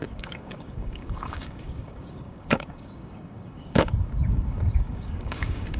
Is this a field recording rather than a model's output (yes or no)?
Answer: no